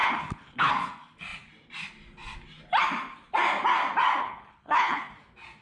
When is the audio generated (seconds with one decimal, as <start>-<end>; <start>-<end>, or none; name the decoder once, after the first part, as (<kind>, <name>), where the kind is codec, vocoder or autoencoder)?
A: 0.0-0.7 (codec, HILCodec); 4.2-5.1